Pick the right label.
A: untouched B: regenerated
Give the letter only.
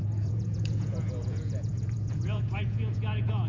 B